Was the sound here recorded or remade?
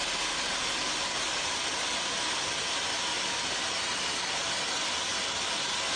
recorded